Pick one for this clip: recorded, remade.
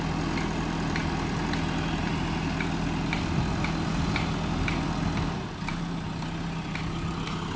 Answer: recorded